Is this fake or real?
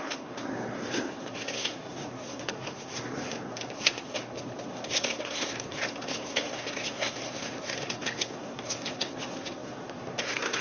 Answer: fake